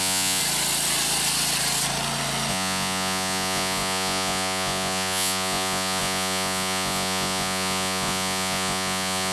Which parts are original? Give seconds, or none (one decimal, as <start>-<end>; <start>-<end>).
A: 0.4-2.5

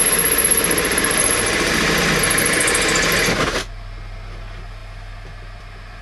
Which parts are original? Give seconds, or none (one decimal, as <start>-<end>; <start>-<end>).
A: 0.0-6.0